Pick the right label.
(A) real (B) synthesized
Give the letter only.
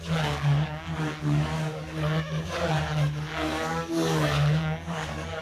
B